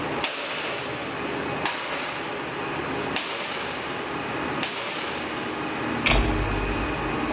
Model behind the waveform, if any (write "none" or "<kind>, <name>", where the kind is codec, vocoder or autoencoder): none